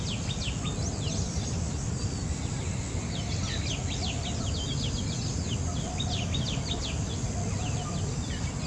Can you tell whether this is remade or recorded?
recorded